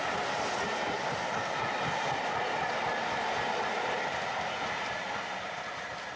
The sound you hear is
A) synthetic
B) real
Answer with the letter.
B